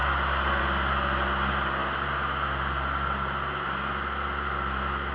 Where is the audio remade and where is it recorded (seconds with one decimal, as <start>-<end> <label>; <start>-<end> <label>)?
0.0-5.1 recorded